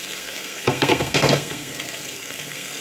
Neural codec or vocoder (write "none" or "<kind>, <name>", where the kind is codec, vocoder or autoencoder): codec, SNAC